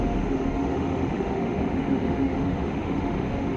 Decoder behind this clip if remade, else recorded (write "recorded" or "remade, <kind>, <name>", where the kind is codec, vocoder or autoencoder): remade, autoencoder, DAC-VAE